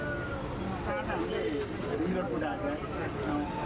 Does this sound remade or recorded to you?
recorded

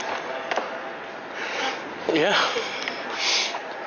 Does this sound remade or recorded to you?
recorded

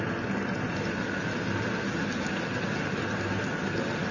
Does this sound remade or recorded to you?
recorded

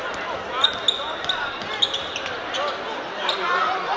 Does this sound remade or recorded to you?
recorded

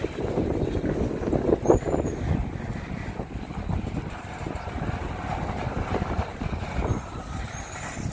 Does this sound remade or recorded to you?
recorded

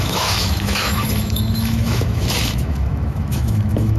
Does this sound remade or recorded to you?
remade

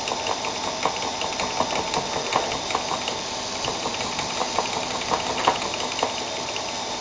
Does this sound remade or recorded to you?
recorded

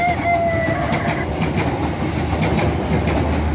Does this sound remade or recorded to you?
recorded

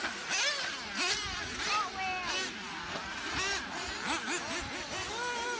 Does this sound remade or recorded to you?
recorded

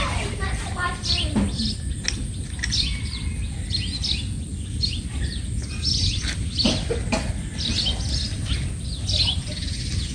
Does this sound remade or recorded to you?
recorded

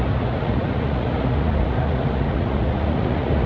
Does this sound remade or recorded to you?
remade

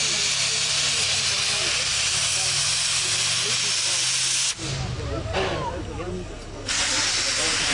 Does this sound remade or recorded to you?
recorded